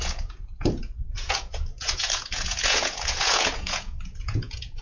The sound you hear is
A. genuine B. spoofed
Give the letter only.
B